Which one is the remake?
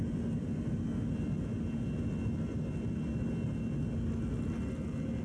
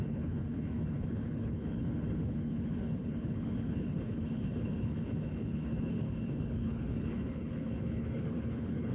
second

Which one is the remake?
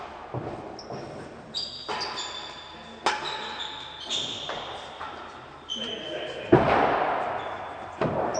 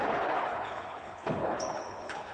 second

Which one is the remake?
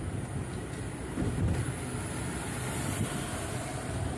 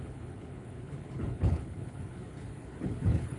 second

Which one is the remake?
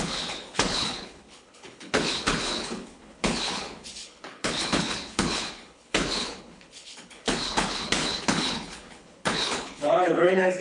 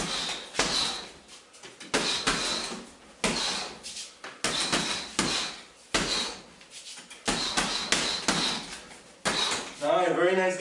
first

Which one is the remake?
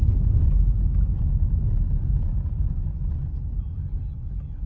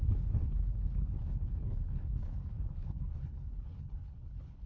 second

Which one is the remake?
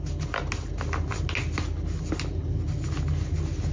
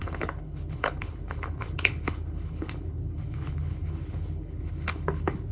second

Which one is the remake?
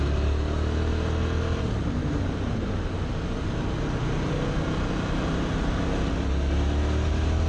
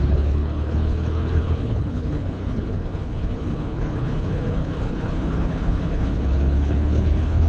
second